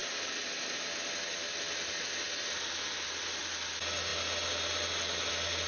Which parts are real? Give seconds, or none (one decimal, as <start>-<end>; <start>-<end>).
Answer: 0.0-5.7